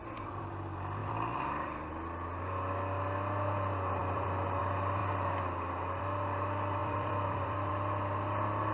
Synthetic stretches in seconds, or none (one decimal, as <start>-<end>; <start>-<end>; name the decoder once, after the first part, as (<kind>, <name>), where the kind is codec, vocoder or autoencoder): 1.0-1.9 (vocoder, BigVGAN v2); 4.0-4.6; 6.8-7.7